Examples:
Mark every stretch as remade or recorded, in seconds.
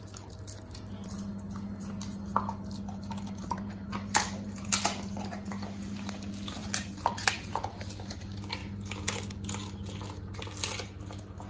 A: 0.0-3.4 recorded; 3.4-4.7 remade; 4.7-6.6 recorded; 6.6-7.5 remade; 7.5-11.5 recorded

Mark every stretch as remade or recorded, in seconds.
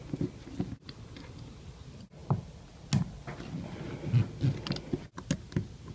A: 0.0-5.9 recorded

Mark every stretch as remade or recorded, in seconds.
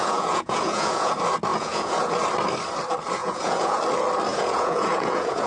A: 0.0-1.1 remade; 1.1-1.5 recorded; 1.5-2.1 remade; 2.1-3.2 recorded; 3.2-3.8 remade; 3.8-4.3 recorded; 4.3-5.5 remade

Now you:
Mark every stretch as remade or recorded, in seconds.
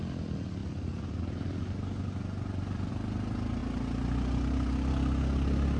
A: 0.0-5.8 recorded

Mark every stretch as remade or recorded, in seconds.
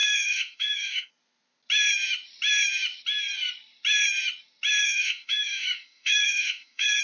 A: 0.0-1.1 remade; 1.1-4.8 recorded; 4.8-7.0 remade